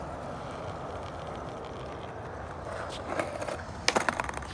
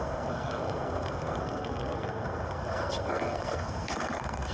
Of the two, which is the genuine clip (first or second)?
first